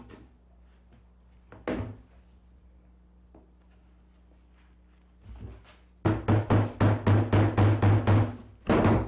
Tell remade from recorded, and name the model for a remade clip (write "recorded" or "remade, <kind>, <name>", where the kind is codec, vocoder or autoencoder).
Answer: recorded